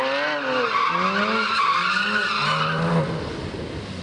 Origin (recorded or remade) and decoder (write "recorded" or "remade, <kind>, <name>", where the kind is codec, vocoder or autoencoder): recorded